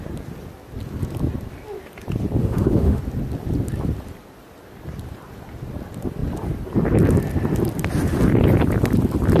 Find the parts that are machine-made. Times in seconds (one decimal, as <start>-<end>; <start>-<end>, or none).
2.4-3.0